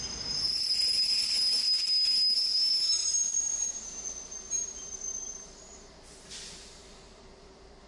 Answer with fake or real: real